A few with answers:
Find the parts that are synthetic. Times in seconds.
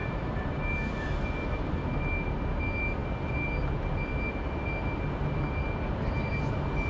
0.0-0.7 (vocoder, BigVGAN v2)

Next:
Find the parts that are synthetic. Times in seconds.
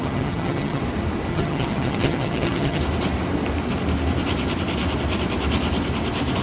0.0-0.8 (vocoder, HiFi-GAN); 1.3-2.8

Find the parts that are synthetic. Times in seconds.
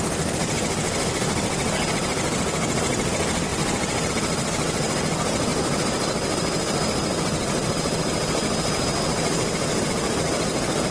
none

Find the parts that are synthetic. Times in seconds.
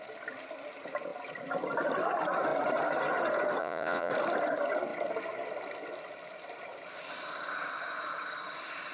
3.6-4.1 (vocoder, Vocos)